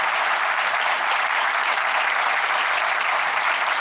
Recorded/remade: recorded